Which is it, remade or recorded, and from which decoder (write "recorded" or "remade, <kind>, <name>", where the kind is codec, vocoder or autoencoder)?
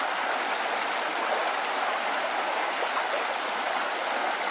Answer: recorded